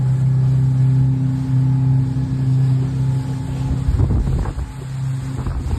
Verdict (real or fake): real